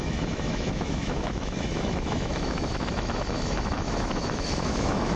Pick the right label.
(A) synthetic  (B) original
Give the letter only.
A